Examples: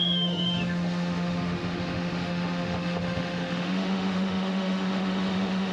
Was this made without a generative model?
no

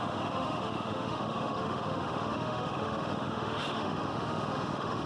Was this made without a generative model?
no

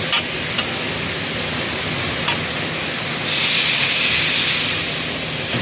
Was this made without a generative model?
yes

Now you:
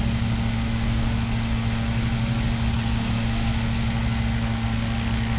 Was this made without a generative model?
yes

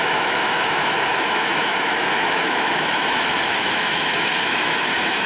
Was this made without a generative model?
no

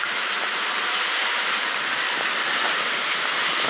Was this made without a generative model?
yes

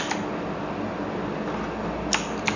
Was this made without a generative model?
yes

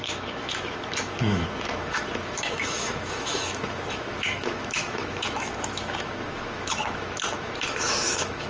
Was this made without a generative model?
no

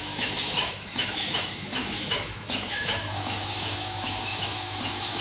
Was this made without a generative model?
no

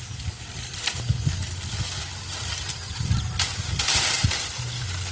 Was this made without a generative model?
yes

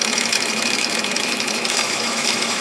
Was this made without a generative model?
no